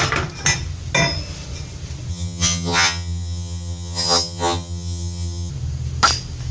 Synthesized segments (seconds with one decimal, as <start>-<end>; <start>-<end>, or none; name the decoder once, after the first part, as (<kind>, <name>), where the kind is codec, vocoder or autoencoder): 2.1-5.5 (vocoder, HiFi-GAN)